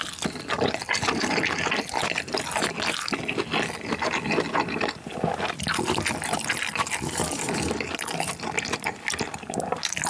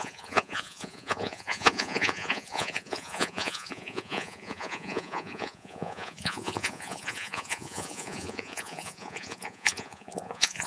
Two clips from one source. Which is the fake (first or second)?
second